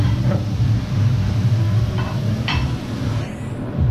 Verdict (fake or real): real